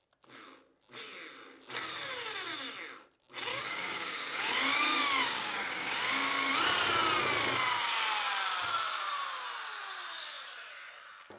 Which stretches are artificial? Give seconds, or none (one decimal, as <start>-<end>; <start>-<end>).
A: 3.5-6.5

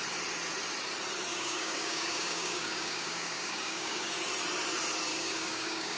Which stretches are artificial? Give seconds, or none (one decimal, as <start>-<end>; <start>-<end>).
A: 1.3-4.1; 5.1-6.0

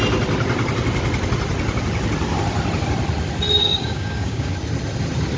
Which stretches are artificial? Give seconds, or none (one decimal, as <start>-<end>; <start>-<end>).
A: 3.6-4.5

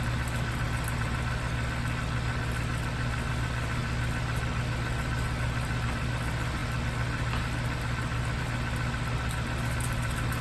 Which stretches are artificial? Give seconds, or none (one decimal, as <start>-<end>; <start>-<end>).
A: none

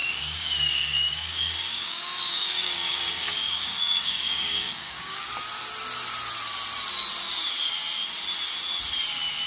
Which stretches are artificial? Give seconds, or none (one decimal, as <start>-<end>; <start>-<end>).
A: 0.0-5.3